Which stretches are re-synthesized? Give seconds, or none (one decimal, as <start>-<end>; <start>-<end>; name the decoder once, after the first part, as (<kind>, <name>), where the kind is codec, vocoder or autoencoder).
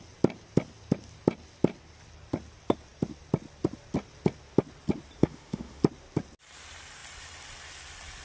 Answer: 5.2-5.8 (autoencoder, DAC-VAE)